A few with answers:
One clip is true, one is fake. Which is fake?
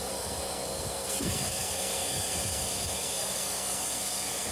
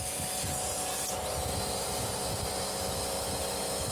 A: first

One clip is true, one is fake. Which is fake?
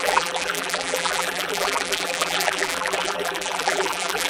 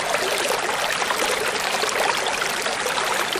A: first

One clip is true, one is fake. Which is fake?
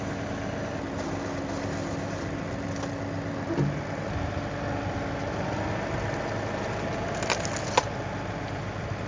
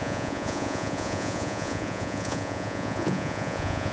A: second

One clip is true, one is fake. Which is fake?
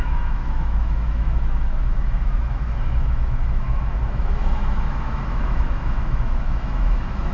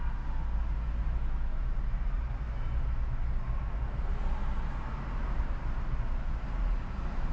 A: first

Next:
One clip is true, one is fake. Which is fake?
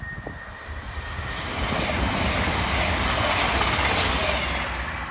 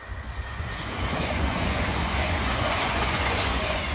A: second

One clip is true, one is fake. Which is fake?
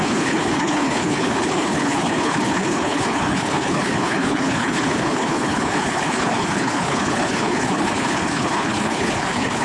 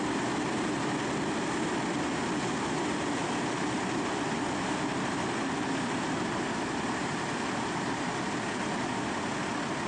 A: first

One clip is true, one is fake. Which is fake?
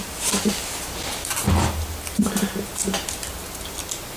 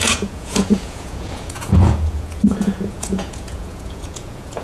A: second